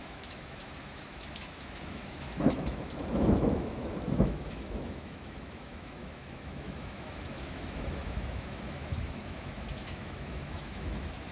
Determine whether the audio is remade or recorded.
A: remade